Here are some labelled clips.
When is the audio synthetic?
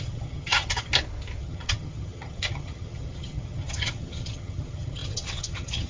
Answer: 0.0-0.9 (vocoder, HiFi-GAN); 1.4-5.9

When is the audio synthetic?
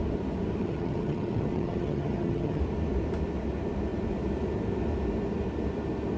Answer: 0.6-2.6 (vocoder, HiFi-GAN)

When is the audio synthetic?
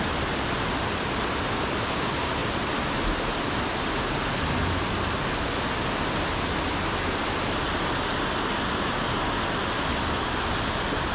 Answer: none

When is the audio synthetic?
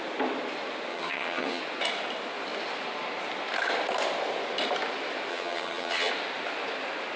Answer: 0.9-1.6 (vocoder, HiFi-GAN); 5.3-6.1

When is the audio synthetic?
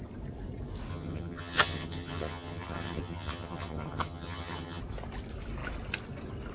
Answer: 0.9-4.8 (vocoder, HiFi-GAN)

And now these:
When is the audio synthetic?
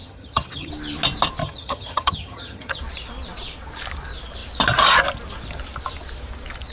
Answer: 0.0-0.7 (vocoder, HiFi-GAN); 1.4-2.8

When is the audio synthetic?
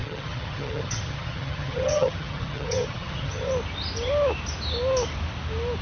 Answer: 0.0-3.5 (vocoder, HiFi-GAN)